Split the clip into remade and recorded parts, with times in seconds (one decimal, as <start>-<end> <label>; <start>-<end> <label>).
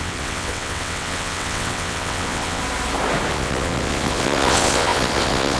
0.0-2.6 remade; 2.6-3.3 recorded; 3.3-5.6 remade